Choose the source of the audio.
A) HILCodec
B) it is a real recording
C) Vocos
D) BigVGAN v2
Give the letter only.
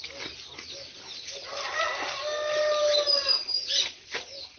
B